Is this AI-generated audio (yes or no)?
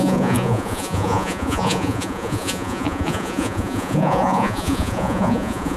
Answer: yes